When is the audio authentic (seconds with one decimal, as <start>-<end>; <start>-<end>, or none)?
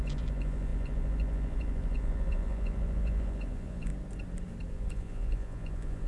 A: 3.9-4.7